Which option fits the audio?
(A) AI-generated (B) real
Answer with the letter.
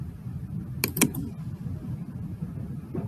B